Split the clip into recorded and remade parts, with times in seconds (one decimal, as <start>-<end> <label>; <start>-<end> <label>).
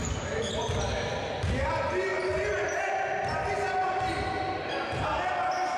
0.0-5.8 recorded